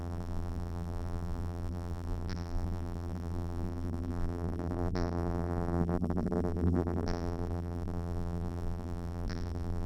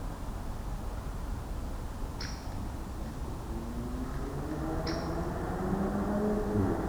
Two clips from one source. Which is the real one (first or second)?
second